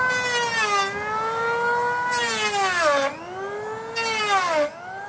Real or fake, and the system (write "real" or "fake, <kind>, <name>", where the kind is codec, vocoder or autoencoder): real